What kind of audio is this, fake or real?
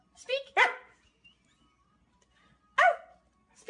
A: real